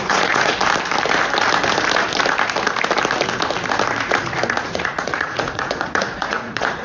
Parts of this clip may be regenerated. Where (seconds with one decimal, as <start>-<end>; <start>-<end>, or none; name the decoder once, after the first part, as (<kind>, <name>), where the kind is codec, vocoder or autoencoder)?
0.0-0.5 (vocoder, Vocos); 4.6-6.8